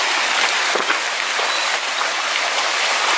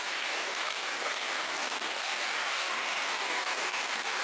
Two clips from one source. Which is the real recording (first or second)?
first